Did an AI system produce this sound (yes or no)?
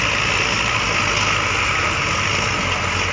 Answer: no